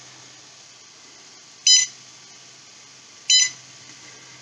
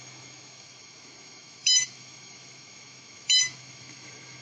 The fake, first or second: second